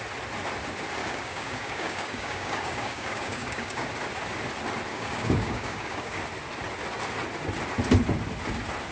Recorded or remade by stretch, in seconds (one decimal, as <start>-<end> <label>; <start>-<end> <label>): 0.0-1.0 recorded; 1.0-3.9 remade; 3.9-4.9 recorded; 4.9-6.2 remade; 6.2-8.9 recorded